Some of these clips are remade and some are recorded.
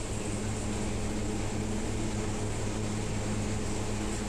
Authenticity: recorded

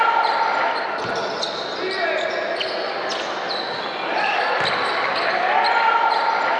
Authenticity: recorded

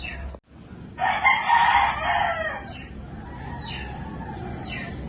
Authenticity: recorded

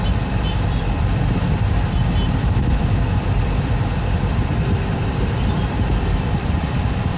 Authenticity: remade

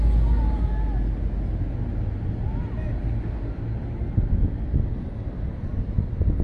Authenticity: recorded